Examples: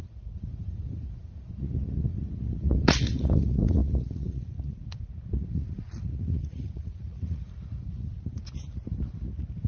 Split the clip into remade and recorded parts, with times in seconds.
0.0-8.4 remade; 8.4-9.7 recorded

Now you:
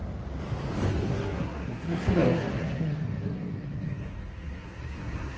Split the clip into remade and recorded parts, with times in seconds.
0.0-0.9 recorded; 0.9-5.4 remade

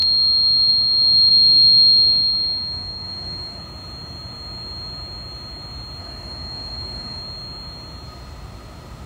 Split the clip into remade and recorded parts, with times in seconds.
0.0-1.3 recorded; 1.3-3.6 remade; 3.6-6.0 recorded; 6.0-7.2 remade; 7.2-9.1 recorded

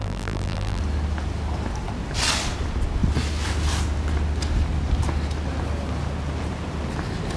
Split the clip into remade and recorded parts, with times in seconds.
0.0-0.8 remade; 0.8-7.4 recorded

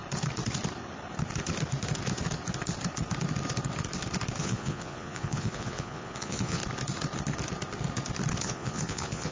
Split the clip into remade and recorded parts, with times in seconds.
0.0-4.4 recorded; 4.4-6.6 remade; 6.6-8.4 recorded; 8.4-9.3 remade

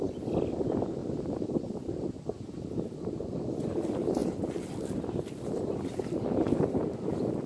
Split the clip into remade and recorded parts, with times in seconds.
0.0-1.0 recorded; 1.0-1.9 remade; 1.9-4.2 recorded; 4.2-6.3 remade; 6.3-7.5 recorded

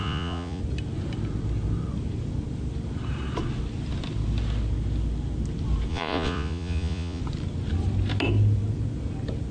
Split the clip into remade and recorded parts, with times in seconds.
0.0-0.6 remade; 0.6-5.9 recorded; 5.9-7.2 remade; 7.2-9.5 recorded